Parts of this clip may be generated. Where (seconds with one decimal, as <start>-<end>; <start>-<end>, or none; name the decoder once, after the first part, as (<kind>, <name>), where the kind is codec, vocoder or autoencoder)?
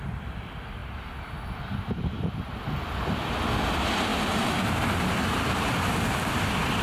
0.8-2.6 (vocoder, BigVGAN v2); 4.1-5.7